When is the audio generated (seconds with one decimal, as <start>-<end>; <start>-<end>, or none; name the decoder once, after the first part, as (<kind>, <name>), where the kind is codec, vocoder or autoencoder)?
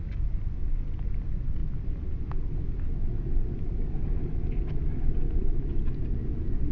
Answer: none